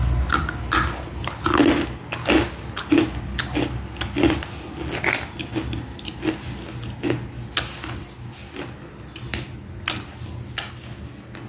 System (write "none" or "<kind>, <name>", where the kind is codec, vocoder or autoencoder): none